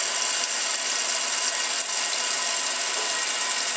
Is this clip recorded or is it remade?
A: recorded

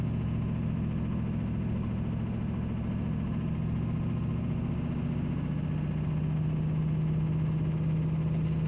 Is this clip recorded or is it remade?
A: recorded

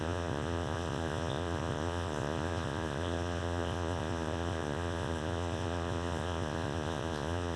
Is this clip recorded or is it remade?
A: remade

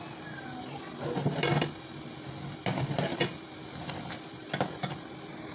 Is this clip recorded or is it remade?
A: recorded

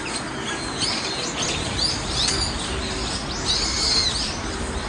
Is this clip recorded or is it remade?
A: recorded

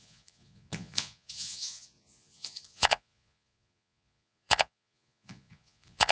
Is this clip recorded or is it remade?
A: remade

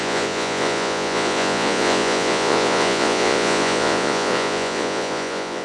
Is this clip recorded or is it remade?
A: remade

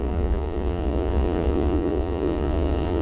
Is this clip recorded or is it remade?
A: remade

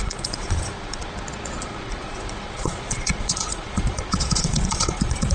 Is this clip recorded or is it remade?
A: remade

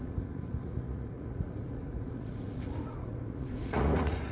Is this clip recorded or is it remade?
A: remade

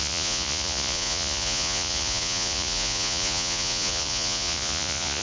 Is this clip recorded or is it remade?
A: remade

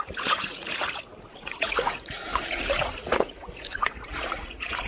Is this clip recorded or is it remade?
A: remade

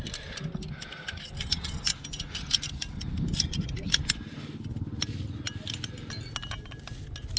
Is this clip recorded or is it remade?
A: recorded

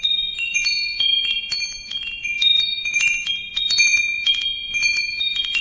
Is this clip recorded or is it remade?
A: remade